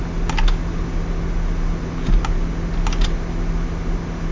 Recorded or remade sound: recorded